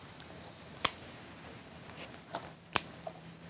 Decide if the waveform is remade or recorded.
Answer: remade